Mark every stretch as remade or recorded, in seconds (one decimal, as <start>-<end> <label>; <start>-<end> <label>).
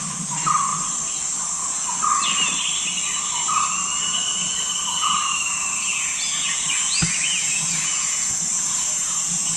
0.0-4.3 recorded; 4.3-9.6 remade